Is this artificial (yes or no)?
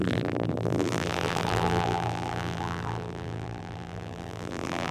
yes